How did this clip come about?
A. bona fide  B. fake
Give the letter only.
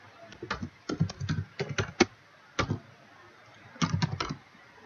A